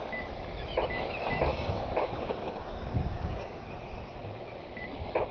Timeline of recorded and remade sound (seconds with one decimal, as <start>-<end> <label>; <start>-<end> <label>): 0.0-1.5 recorded; 1.5-3.7 remade; 3.7-5.3 recorded